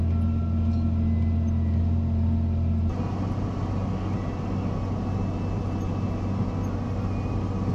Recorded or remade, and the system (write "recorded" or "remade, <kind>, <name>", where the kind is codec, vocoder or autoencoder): recorded